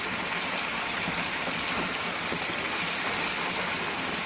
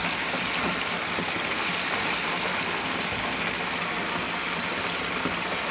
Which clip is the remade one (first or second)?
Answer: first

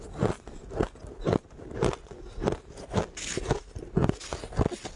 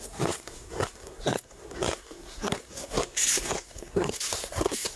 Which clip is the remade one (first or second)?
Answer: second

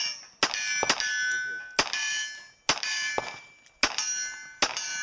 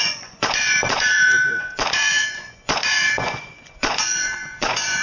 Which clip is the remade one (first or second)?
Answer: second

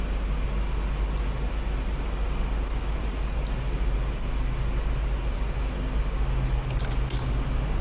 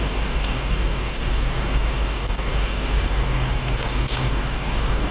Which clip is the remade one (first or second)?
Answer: second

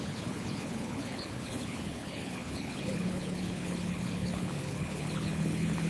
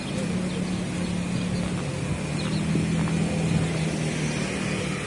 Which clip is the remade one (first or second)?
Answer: first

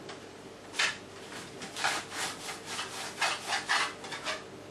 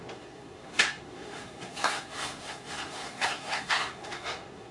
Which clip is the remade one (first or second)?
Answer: second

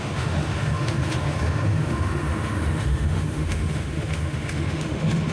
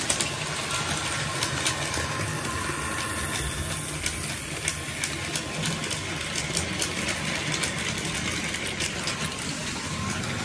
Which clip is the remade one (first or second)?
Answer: first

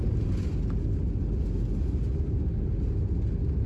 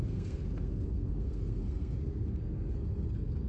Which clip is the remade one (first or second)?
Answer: second